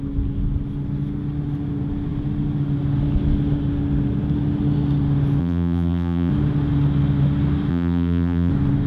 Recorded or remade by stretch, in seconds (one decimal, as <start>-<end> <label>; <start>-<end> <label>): 0.0-5.4 recorded; 5.4-6.3 remade; 6.3-7.7 recorded; 7.7-8.5 remade; 8.5-8.9 recorded